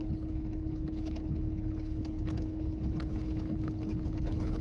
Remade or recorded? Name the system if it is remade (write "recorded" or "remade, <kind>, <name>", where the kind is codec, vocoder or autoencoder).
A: remade, codec, HILCodec